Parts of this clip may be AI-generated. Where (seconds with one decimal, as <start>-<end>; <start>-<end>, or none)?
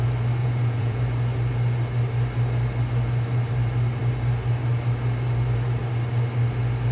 0.4-1.0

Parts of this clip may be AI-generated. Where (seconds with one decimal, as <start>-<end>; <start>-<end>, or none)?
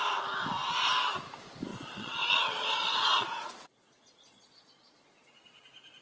1.7-5.3